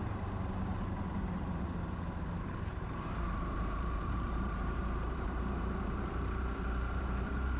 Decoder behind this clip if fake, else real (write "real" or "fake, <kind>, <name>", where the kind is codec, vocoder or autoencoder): fake, vocoder, BigVGAN v2